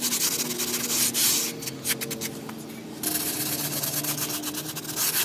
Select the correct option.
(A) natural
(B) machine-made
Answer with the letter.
A